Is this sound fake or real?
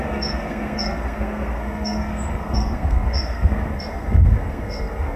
fake